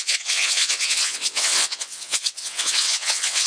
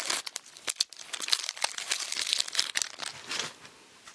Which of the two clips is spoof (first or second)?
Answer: first